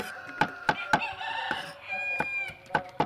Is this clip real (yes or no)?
yes